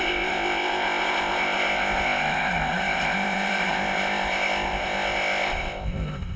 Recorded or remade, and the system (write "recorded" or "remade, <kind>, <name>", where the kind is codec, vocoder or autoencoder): remade, codec, ZipCodec